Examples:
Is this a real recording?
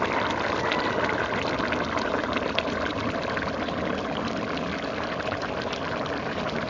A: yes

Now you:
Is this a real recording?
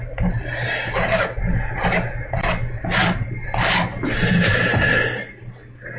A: yes